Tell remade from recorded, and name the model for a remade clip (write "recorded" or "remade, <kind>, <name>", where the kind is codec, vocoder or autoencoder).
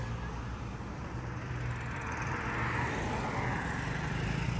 recorded